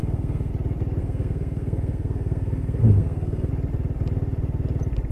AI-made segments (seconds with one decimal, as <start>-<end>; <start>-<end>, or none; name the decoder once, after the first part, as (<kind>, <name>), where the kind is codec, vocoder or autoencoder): 0.0-0.5 (codec, SNAC); 1.0-3.5